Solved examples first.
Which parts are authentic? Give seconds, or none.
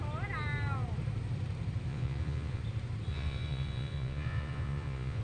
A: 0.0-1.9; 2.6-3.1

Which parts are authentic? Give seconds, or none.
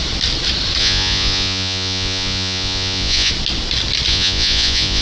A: 0.0-0.8; 3.3-4.1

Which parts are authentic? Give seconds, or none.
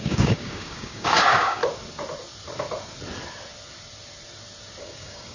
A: 1.6-4.8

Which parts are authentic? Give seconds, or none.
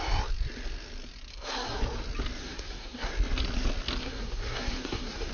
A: 0.0-1.3; 1.8-2.4; 3.1-4.0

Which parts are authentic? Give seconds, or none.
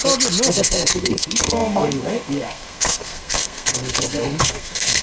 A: 0.0-0.5